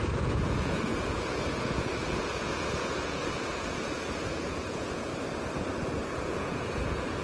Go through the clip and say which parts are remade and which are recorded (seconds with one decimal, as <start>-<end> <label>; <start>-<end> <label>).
0.0-5.1 remade; 5.1-5.9 recorded; 5.9-7.2 remade